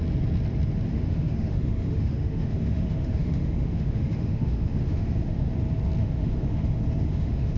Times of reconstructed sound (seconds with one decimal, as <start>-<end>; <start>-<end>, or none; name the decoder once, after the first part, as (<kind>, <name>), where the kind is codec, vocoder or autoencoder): 0.9-5.5 (autoencoder, DAC-VAE); 6.0-7.6